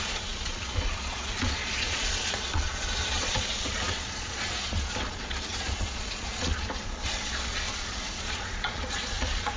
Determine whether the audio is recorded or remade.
remade